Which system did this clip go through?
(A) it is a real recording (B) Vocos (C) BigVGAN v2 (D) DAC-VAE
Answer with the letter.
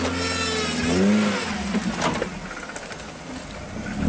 A